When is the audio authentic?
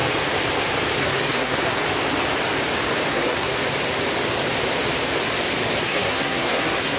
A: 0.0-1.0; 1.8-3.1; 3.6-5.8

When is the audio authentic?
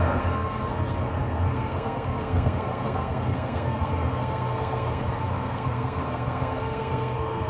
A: none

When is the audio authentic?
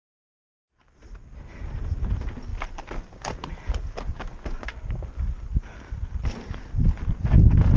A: 0.0-7.8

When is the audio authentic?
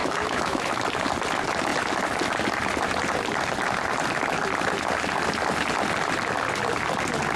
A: 0.8-7.4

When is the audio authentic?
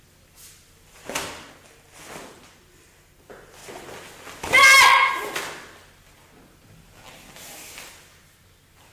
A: 1.5-8.9